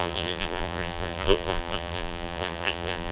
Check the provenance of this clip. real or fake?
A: fake